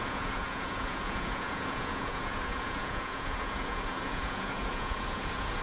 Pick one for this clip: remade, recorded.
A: remade